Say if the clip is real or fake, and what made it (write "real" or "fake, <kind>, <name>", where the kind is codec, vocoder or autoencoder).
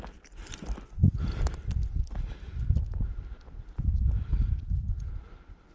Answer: fake, vocoder, BigVGAN v2